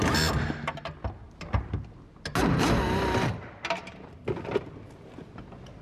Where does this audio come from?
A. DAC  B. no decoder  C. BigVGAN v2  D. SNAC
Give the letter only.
B